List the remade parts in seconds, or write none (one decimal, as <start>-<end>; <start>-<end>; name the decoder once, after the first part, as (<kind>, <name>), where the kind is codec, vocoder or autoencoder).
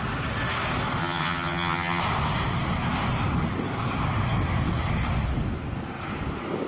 1.0-2.0 (vocoder, HiFi-GAN)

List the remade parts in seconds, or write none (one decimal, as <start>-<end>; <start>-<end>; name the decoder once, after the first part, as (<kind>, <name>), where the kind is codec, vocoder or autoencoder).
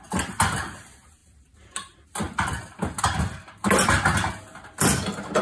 none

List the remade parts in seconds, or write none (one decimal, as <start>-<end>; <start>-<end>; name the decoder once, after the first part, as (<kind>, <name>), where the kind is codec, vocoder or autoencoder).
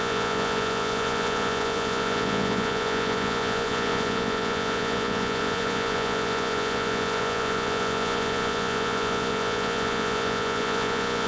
0.0-11.3 (vocoder, Vocos)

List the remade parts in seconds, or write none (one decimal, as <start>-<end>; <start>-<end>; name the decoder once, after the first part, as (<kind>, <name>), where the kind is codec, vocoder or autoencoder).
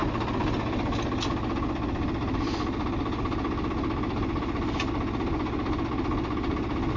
none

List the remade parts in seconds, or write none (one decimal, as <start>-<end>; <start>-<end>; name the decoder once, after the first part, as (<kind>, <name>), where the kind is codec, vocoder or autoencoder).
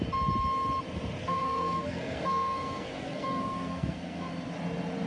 1.2-4.3 (codec, SNAC)